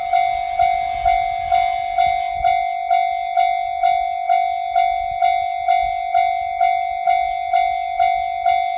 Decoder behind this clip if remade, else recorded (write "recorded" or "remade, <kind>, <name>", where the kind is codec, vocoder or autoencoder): recorded